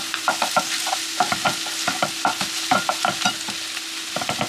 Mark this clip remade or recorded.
recorded